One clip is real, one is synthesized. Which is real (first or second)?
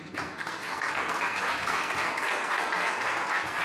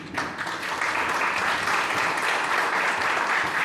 second